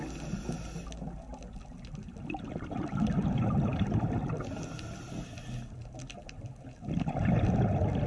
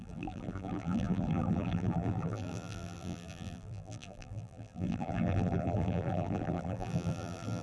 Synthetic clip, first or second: second